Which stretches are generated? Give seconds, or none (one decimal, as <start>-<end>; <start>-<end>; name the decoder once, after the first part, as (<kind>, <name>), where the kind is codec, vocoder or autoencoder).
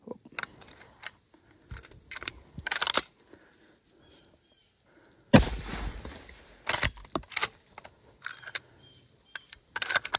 4.6-10.2 (vocoder, BigVGAN v2)